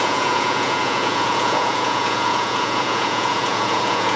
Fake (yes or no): yes